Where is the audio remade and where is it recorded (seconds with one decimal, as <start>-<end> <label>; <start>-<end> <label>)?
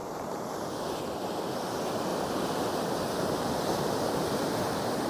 0.0-0.7 remade; 0.7-2.1 recorded; 2.1-5.1 remade